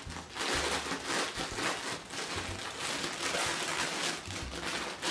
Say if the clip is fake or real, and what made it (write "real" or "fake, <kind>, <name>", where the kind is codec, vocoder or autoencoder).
real